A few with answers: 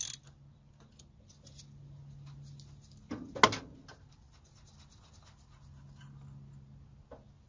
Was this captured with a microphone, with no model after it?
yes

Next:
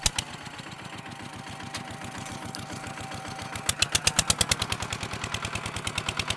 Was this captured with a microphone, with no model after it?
yes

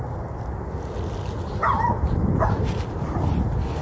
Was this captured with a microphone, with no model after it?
yes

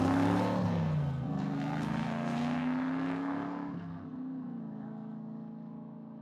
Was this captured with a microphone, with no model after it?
no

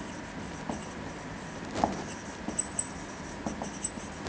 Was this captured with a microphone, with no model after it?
yes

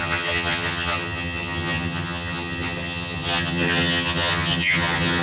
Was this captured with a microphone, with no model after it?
no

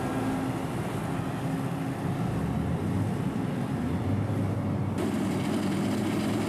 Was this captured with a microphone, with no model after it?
yes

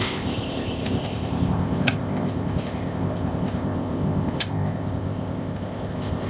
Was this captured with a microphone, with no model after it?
no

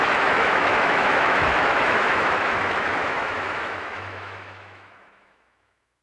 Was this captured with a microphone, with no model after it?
no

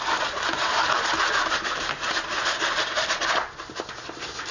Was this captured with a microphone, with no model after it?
yes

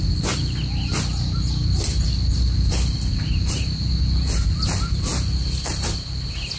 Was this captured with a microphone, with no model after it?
yes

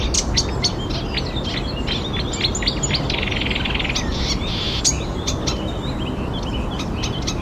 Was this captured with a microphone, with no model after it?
yes